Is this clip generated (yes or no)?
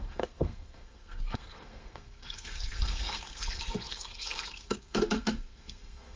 yes